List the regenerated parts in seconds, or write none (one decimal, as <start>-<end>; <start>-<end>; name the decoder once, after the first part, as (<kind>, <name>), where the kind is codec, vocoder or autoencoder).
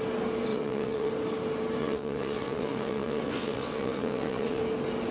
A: 0.5-1.1 (vocoder, WaveNeXt); 1.8-4.6